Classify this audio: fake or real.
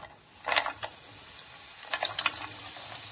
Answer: real